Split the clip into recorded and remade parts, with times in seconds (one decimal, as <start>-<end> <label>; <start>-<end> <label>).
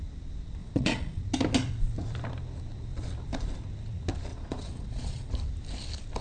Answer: 0.0-0.6 recorded; 0.6-1.2 remade; 1.2-4.3 recorded; 4.3-5.3 remade; 5.3-6.2 recorded